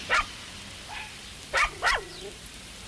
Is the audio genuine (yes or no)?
no